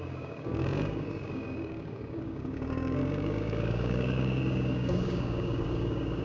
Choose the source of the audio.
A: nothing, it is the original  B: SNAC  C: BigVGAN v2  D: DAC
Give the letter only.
D